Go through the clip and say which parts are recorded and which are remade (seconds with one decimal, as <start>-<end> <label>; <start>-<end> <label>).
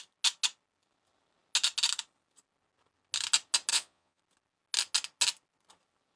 0.0-3.7 recorded; 3.7-4.2 remade; 4.2-6.2 recorded